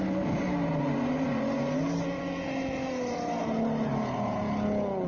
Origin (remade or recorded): recorded